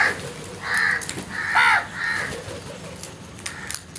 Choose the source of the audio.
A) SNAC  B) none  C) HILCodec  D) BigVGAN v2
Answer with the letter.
B